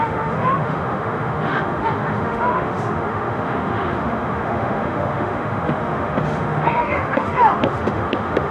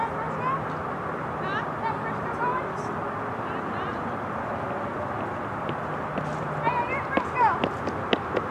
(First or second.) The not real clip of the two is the first